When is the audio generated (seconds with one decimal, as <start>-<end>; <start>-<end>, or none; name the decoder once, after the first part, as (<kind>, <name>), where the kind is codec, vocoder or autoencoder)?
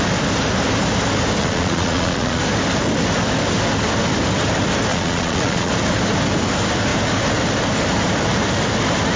1.4-2.4 (vocoder, Vocos); 4.9-5.7